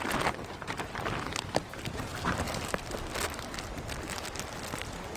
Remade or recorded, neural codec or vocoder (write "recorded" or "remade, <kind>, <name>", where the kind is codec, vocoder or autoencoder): recorded